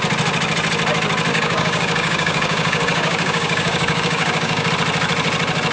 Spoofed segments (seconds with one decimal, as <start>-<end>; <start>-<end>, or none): 1.3-4.7